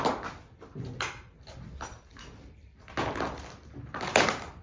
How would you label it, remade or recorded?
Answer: recorded